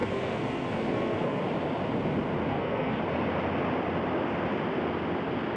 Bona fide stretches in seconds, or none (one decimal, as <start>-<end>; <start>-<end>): 1.4-2.5; 3.0-5.6